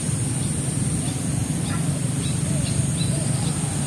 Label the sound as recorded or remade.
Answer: recorded